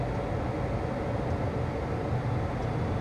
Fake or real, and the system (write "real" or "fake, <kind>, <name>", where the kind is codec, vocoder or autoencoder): real